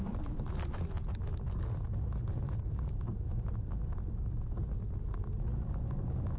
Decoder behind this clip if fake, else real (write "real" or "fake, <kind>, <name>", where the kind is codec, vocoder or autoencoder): real